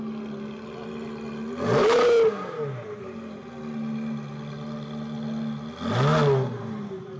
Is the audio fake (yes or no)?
no